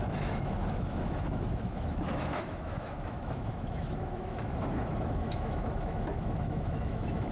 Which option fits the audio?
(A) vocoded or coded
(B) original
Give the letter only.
A